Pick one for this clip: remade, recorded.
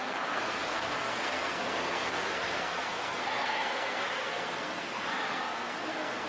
remade